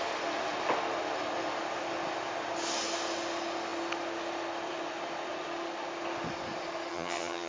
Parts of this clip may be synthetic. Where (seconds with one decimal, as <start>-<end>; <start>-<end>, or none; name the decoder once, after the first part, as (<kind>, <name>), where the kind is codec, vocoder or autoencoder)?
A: 6.9-7.5 (vocoder, HiFi-GAN)